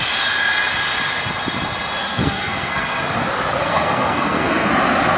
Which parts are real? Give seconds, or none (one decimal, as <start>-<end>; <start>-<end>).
0.0-2.0; 3.0-3.6; 4.7-5.2